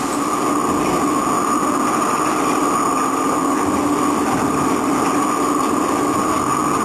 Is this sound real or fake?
real